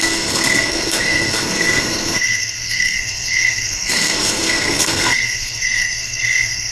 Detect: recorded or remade remade